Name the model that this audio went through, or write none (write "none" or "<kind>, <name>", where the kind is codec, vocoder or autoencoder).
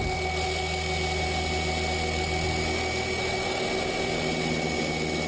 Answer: none